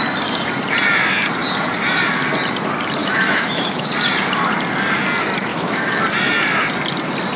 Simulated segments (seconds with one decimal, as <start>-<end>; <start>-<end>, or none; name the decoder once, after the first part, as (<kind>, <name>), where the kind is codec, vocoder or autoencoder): 3.0-3.9 (autoencoder, DAC-VAE); 5.5-6.0